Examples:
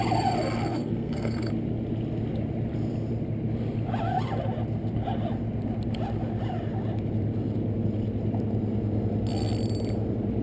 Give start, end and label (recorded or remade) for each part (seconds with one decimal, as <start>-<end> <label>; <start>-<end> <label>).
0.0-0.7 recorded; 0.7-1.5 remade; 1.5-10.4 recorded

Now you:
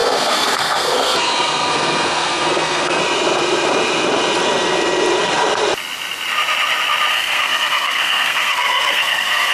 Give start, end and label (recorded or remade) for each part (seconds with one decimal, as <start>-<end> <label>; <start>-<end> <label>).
0.0-3.0 remade; 3.0-7.1 recorded; 7.1-9.5 remade

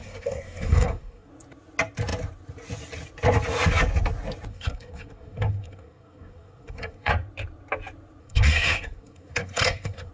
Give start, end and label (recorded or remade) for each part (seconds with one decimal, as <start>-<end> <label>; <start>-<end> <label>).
0.0-1.3 remade; 1.3-4.5 recorded; 4.5-7.1 remade; 7.1-8.2 recorded; 8.2-10.1 remade